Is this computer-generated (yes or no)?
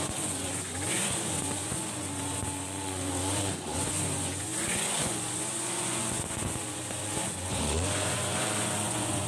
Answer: yes